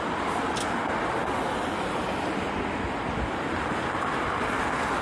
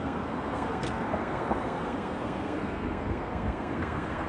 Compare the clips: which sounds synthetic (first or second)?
second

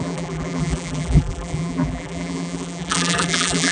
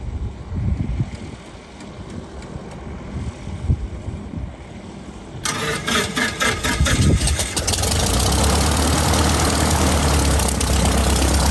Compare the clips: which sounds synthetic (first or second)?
first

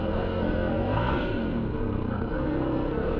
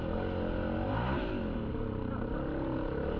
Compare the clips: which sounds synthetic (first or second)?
first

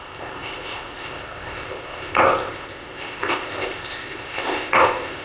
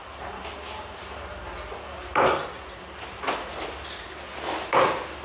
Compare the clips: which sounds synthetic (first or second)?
first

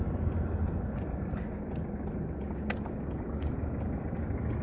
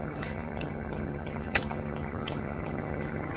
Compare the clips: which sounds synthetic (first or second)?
second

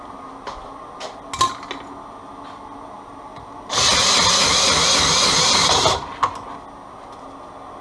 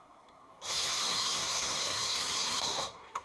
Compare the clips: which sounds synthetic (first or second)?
second